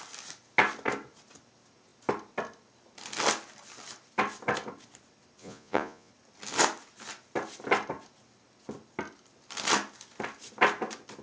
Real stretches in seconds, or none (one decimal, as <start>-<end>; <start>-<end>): 0.0-5.4; 6.1-11.2